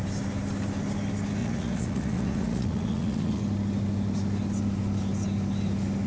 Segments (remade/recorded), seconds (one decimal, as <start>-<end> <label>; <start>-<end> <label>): 0.0-1.4 recorded; 1.4-3.4 remade; 3.4-6.1 recorded